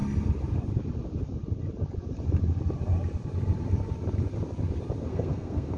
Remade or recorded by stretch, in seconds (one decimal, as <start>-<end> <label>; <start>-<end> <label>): 0.0-5.1 recorded; 5.1-5.8 remade